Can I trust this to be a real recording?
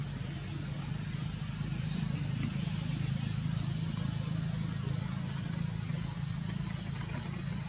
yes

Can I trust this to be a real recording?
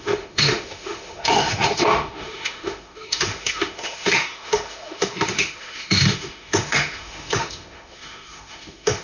no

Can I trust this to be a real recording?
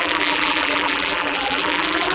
no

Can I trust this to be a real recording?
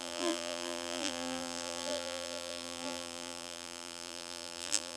no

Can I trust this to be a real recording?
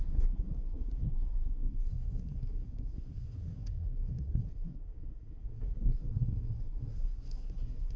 no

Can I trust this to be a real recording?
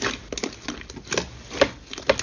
yes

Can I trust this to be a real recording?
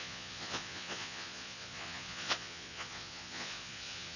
no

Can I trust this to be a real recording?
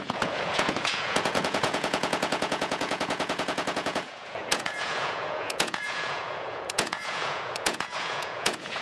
no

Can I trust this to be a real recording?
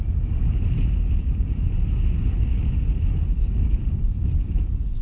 yes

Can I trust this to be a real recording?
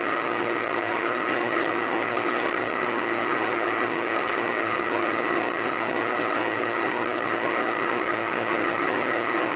no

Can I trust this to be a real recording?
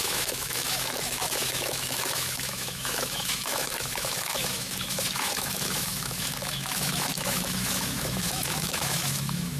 no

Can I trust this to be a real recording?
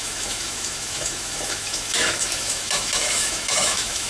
no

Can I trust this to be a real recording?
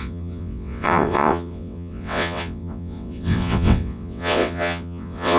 no